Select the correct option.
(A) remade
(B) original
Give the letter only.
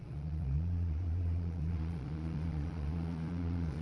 A